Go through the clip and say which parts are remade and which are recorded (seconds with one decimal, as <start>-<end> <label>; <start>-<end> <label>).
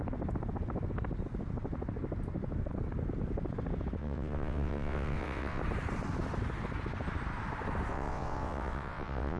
0.0-4.0 recorded; 4.0-5.6 remade; 5.6-7.9 recorded; 7.9-9.4 remade